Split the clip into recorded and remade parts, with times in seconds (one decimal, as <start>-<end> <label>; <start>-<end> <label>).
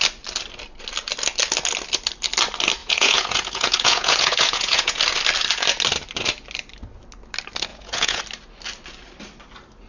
0.0-2.8 recorded; 2.8-5.0 remade; 5.0-7.7 recorded; 7.7-8.2 remade; 8.2-9.9 recorded